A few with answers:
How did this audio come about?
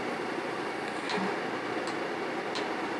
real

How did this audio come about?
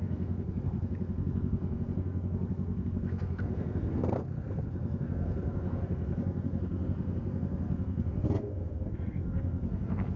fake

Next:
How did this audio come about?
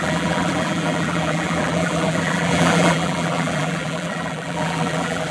fake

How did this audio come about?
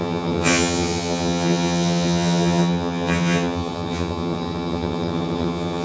fake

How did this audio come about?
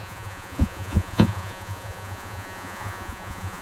fake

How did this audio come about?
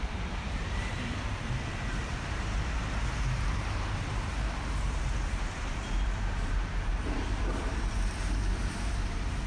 fake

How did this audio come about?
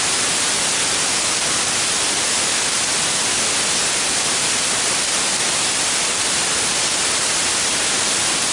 real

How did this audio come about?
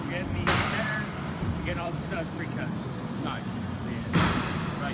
fake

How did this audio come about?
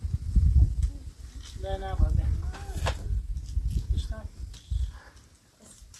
real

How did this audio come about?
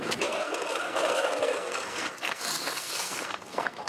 fake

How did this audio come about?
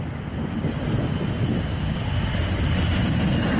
real